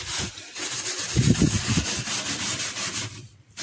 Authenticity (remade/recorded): remade